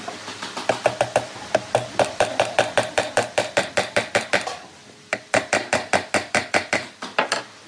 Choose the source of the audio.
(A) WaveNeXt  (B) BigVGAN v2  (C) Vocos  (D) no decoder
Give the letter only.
D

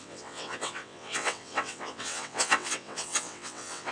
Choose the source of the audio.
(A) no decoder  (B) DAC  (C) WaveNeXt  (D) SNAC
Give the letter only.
C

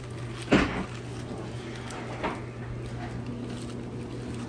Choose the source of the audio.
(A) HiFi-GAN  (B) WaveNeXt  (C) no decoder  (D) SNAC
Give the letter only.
C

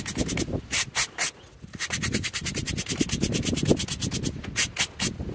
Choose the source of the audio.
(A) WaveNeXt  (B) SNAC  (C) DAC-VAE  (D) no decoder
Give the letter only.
D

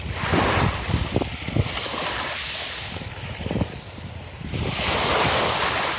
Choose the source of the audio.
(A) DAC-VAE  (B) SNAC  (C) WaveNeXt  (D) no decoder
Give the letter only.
D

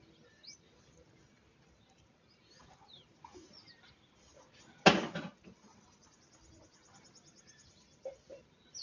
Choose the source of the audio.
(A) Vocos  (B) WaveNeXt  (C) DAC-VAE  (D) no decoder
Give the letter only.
D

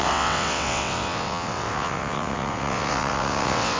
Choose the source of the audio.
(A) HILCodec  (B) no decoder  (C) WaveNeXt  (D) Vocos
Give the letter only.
C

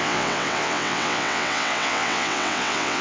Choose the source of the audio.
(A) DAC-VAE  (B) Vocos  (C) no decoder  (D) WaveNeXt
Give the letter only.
D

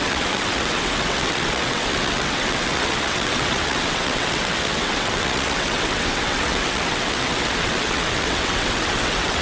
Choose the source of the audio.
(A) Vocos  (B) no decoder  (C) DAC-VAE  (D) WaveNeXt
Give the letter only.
D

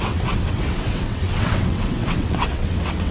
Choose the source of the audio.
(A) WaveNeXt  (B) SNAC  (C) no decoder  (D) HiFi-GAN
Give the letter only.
A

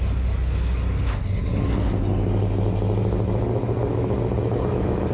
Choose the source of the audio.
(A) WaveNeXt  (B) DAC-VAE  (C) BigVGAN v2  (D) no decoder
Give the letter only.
D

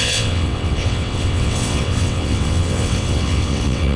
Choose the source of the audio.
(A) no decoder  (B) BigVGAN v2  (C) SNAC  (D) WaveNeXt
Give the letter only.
D